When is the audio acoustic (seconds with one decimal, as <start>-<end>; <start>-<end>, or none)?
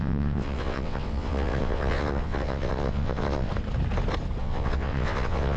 3.5-4.4